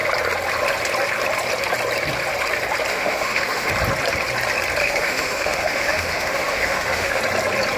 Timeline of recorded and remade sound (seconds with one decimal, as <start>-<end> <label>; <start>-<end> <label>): 0.0-2.9 recorded; 2.9-3.7 remade; 3.7-4.8 recorded; 4.8-7.2 remade; 7.2-7.8 recorded